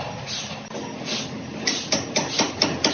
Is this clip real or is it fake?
real